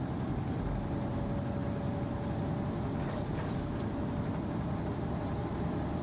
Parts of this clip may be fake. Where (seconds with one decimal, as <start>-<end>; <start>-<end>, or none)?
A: none